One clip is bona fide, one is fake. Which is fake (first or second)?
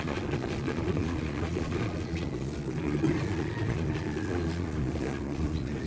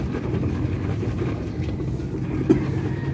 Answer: first